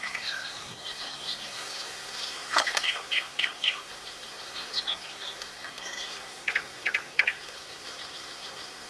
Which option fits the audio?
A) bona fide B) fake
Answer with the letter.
B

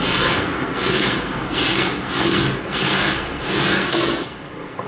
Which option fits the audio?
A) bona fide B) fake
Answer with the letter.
B